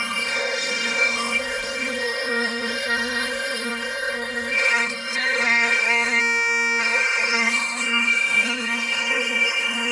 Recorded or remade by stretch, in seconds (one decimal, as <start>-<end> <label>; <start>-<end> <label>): 0.0-6.2 remade; 6.2-6.8 recorded; 6.8-9.9 remade